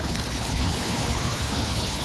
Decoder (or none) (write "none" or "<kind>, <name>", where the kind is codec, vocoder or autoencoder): codec, HILCodec